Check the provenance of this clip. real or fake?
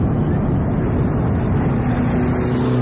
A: real